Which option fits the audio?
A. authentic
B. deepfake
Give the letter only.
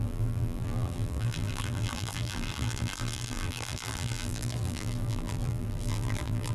B